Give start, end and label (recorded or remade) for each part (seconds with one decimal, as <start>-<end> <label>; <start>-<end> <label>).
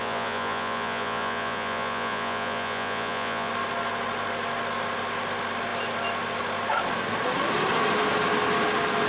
0.0-3.5 remade; 3.5-9.1 recorded